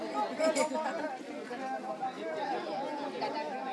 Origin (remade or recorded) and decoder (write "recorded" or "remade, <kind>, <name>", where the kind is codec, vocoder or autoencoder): recorded